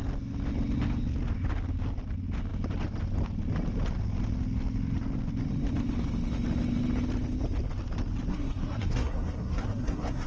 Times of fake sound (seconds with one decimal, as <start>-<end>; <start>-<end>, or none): 8.3-10.3